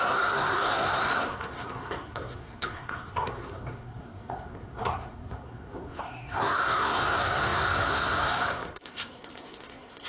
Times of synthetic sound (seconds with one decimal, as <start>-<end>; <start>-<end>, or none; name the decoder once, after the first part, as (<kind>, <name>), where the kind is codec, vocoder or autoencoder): 0.0-10.1 (codec, SNAC)